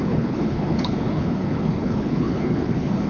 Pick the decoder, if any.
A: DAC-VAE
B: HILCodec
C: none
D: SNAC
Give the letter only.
B